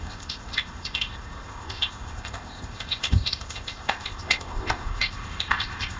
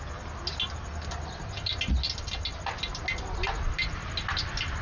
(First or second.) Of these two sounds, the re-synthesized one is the first